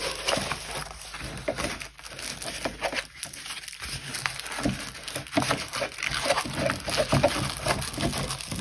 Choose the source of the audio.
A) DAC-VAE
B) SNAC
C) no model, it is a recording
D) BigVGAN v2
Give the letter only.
C